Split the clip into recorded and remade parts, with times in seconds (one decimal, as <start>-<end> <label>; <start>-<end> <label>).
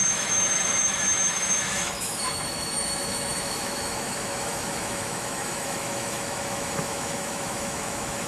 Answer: 0.0-8.3 remade